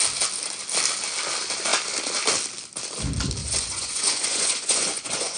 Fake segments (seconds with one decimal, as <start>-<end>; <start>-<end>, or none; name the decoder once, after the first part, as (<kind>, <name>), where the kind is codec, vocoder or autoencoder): 3.4-5.4 (vocoder, Vocos)